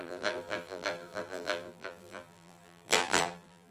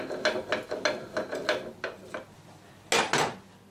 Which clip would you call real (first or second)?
second